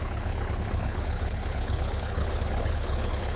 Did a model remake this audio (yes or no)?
yes